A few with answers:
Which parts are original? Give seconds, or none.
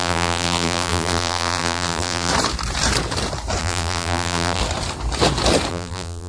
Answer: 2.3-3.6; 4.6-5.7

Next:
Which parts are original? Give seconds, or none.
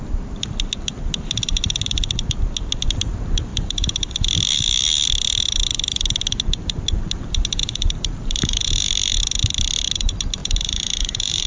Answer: 0.0-3.5; 4.1-7.6; 8.6-10.4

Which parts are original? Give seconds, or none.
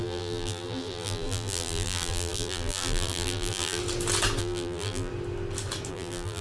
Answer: 3.8-4.4; 5.1-5.9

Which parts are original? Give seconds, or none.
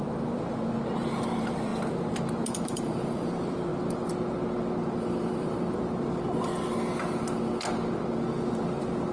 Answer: 3.7-5.1; 6.5-8.5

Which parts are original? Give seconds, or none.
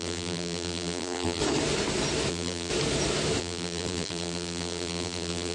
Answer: 1.4-2.3; 2.7-3.4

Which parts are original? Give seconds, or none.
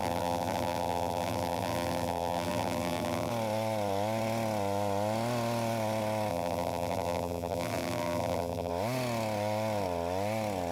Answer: 3.3-6.3; 8.7-10.7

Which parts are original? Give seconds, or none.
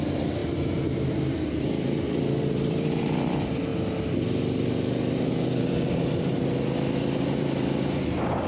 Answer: 3.7-5.6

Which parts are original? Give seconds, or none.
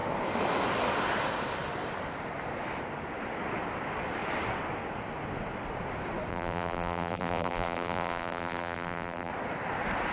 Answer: 0.0-6.3; 9.3-10.1